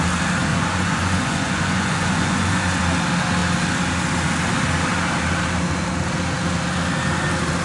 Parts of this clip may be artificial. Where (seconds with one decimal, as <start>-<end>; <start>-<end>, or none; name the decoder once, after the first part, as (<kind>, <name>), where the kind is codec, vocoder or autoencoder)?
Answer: 0.5-2.8 (vocoder, Vocos)